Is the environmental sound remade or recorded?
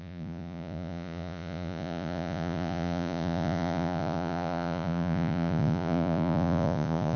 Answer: remade